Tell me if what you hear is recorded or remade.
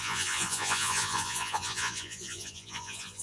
remade